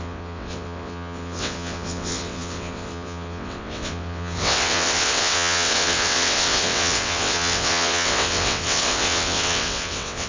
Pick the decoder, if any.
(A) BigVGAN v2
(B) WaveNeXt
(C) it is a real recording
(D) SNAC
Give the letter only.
B